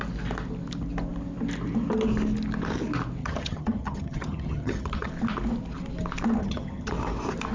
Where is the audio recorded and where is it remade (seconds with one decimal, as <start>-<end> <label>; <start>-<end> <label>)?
0.0-3.2 recorded; 3.2-5.1 remade; 5.1-6.4 recorded; 6.4-6.9 remade; 6.9-7.5 recorded